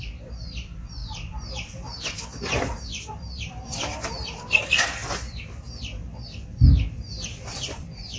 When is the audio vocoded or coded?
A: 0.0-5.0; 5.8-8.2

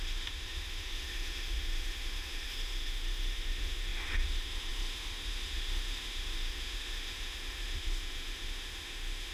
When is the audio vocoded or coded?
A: 0.0-9.3

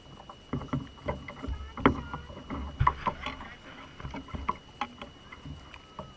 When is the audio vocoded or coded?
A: none